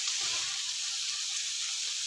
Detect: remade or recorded remade